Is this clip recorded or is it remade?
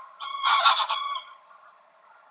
remade